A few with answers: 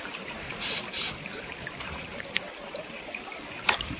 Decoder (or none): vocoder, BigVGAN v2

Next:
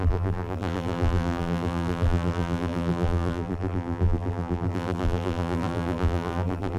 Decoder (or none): vocoder, BigVGAN v2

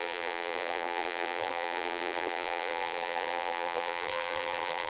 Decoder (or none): vocoder, BigVGAN v2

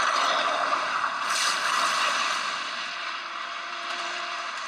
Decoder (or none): vocoder, BigVGAN v2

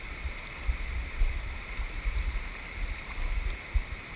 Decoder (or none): none